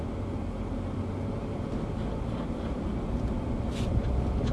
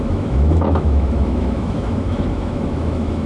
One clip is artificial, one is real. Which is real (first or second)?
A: first